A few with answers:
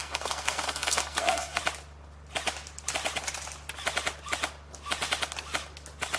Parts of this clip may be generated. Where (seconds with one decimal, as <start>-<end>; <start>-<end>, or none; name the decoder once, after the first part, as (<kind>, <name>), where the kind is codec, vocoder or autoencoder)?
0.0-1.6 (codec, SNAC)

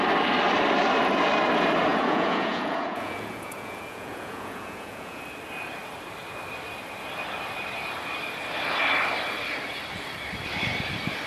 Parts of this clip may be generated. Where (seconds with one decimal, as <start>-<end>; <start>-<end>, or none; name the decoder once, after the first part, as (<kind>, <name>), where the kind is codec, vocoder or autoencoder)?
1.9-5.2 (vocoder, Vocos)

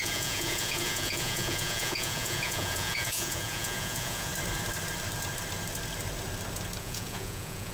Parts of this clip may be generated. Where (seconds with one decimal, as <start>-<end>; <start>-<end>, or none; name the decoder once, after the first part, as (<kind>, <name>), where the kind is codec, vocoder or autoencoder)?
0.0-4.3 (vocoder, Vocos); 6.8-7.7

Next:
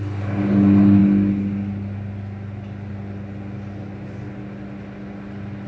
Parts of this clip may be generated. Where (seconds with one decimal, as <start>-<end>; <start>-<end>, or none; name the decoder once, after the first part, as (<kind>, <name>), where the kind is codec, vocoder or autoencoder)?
none

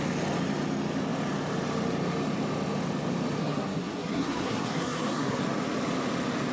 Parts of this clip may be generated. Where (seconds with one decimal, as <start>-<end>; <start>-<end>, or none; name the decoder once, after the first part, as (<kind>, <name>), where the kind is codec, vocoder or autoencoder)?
3.4-5.4 (codec, SNAC)

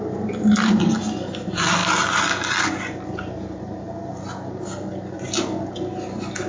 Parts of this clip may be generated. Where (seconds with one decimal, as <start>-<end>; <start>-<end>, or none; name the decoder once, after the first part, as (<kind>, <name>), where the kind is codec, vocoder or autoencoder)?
none

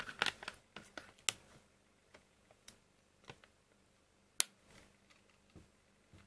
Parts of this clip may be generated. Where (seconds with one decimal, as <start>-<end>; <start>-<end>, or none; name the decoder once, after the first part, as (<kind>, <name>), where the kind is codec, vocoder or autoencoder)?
2.1-2.7 (vocoder, Vocos)